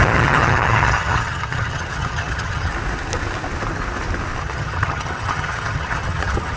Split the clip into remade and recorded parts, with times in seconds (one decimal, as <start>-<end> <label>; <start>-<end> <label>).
0.0-2.7 remade; 2.7-4.4 recorded; 4.4-6.6 remade